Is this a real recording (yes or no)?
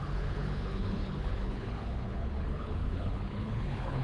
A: no